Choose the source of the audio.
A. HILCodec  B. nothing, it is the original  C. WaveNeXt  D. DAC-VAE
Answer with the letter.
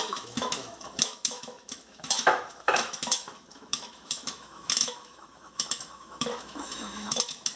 D